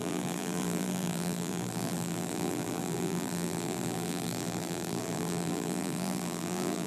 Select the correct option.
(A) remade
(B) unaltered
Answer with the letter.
A